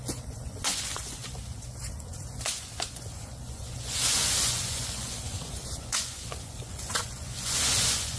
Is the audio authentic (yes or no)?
no